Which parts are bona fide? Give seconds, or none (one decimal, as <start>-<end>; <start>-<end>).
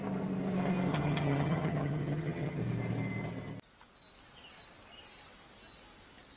0.0-0.9; 2.6-6.4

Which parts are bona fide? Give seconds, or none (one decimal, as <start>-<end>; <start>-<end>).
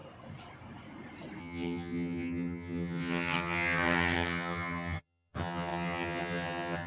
0.0-1.4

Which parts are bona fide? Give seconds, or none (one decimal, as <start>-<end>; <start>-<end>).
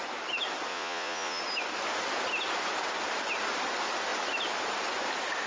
0.0-0.7; 1.4-5.5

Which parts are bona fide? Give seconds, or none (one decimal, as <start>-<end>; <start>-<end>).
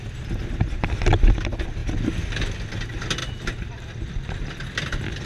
0.0-5.3